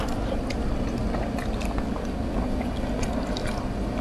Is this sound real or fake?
real